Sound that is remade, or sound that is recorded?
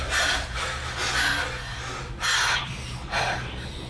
recorded